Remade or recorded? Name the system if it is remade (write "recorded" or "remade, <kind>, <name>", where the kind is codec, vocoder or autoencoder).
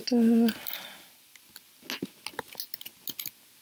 recorded